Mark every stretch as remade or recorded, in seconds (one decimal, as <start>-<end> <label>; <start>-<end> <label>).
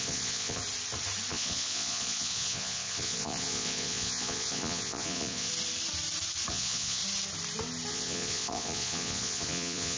0.0-0.6 remade; 0.6-1.3 recorded; 1.3-5.5 remade; 5.5-6.5 recorded; 6.5-7.0 remade; 7.0-7.9 recorded; 7.9-10.0 remade